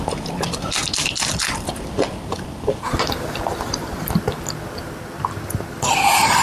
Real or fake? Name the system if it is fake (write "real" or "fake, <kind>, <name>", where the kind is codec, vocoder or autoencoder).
real